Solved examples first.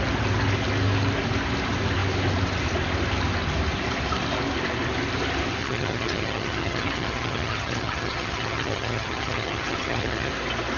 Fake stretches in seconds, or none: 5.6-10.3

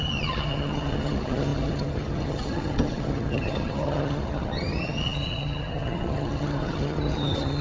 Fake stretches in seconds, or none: 0.0-7.6